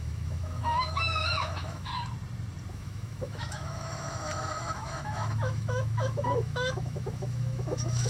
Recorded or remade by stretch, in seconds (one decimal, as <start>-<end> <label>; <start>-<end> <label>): 0.0-1.9 remade; 1.9-2.7 recorded; 2.7-8.1 remade